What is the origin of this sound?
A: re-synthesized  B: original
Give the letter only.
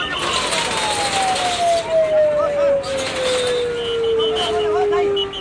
B